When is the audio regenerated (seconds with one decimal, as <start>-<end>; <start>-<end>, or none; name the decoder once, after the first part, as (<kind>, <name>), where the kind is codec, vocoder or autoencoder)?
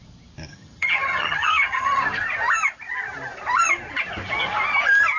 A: 0.5-2.0 (vocoder, HiFi-GAN)